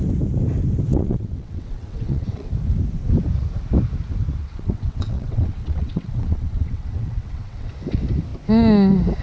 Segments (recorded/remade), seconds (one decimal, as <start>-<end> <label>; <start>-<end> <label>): 0.0-0.9 recorded; 0.9-2.5 remade; 2.5-4.4 recorded; 4.4-7.7 remade; 7.7-9.2 recorded